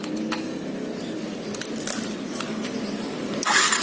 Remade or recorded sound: recorded